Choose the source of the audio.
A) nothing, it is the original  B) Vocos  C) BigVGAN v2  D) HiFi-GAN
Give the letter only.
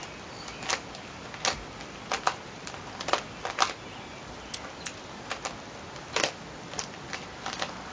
A